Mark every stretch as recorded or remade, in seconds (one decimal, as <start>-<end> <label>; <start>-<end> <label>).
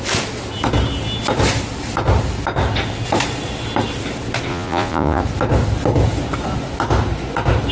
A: 0.0-4.5 recorded; 4.5-5.2 remade; 5.2-7.7 recorded